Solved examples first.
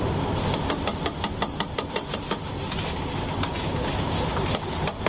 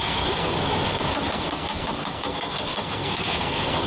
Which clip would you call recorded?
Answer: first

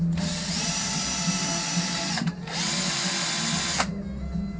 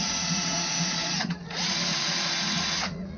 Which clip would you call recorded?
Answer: first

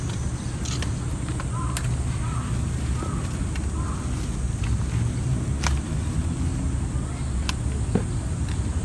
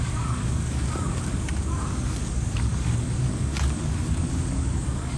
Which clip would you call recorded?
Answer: first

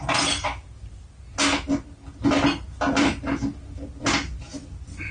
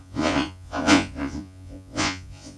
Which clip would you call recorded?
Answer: first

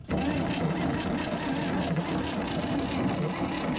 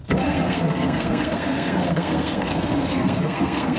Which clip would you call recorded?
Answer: first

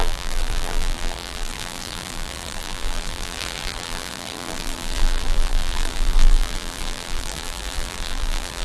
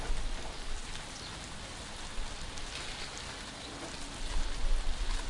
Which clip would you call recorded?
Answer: second